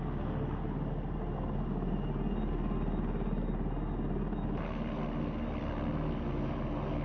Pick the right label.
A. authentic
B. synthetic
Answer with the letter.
A